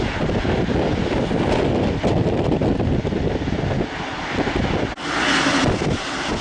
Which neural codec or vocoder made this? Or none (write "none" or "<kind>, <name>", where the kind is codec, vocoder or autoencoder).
none